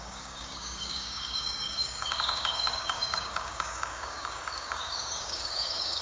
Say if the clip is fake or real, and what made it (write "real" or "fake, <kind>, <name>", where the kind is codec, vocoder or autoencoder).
fake, codec, DAC